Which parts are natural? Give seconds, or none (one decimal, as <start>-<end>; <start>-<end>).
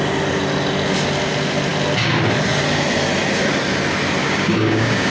0.0-4.2